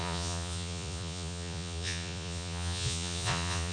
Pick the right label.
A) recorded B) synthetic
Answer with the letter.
B